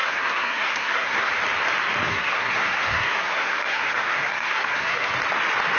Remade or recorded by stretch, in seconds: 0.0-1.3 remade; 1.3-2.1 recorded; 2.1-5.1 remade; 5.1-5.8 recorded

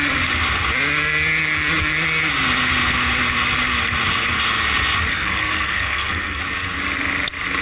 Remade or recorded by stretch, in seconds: 0.0-5.1 recorded; 5.1-6.4 remade; 6.4-7.6 recorded

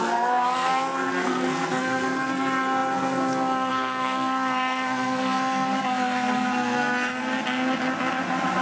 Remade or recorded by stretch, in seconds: 0.0-7.2 remade; 7.2-8.6 recorded

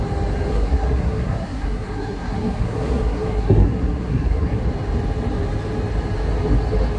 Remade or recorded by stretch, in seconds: 0.0-0.5 recorded; 0.5-4.6 remade; 4.6-7.0 recorded

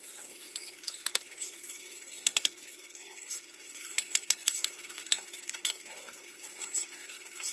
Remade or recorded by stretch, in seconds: 0.0-7.5 remade